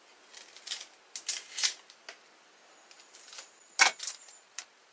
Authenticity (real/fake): real